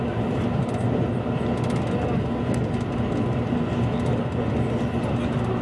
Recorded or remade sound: recorded